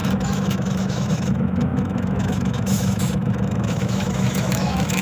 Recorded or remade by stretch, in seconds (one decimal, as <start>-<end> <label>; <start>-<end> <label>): 0.0-5.0 remade